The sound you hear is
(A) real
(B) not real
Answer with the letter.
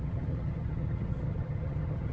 B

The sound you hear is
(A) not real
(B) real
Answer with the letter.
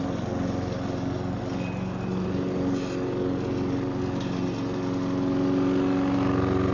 B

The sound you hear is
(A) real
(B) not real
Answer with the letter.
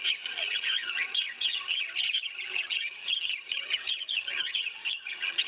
B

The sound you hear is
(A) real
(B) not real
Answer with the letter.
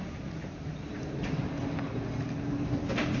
A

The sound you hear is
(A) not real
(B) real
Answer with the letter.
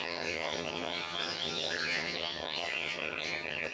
A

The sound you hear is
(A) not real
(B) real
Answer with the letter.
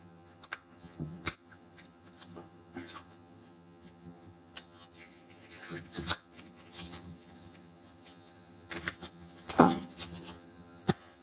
A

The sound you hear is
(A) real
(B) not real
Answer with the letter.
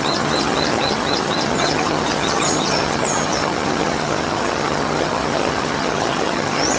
B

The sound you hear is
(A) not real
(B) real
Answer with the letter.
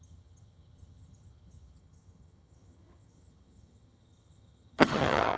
A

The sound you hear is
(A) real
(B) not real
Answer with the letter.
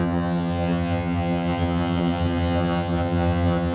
B